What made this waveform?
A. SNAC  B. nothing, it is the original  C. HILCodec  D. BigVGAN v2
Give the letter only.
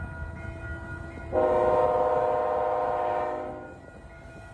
B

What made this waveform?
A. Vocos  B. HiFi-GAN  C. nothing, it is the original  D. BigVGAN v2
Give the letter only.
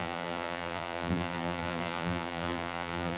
D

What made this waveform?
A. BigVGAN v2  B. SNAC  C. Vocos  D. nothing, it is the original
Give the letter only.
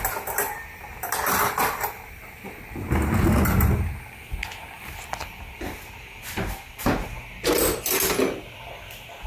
D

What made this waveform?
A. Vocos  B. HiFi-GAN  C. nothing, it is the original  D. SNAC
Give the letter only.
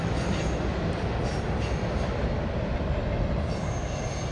C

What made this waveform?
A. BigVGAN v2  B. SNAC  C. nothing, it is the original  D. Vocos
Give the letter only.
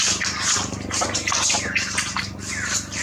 C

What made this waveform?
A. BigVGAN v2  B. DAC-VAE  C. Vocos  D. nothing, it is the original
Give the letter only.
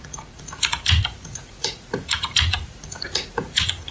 C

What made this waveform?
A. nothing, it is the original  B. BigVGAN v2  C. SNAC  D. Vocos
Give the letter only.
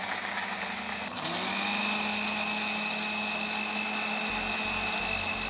A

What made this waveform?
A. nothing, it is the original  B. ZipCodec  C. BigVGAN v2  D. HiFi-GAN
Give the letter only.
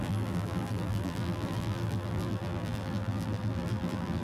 C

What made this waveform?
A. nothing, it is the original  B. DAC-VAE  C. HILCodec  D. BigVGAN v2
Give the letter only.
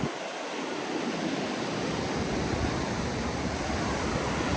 A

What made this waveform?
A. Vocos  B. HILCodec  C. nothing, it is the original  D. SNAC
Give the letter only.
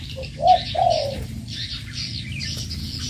C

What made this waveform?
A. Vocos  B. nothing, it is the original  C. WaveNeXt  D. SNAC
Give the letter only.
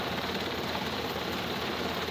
B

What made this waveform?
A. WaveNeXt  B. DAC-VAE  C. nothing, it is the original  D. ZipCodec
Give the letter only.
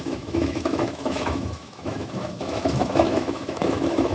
B